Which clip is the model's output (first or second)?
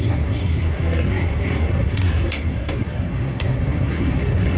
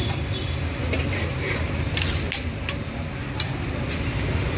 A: first